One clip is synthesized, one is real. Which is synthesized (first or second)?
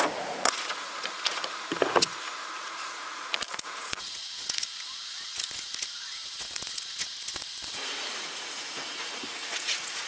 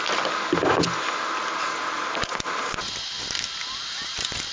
first